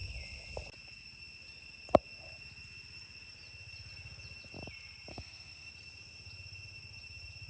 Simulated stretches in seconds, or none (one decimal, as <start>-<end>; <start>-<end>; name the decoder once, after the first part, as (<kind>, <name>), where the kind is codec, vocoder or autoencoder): 5.1-5.7 (autoencoder, DAC-VAE)

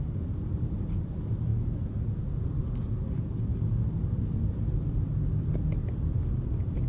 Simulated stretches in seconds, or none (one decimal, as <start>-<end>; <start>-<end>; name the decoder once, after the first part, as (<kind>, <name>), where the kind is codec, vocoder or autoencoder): 0.0-6.9 (vocoder, BigVGAN v2)

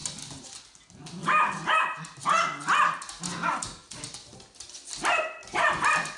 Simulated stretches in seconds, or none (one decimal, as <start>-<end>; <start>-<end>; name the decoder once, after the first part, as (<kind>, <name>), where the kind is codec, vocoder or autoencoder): none

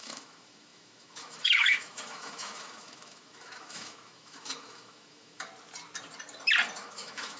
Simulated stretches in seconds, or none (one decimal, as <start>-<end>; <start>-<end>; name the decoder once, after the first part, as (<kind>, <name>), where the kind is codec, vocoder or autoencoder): 0.0-5.5 (autoencoder, DAC-VAE); 6.8-7.4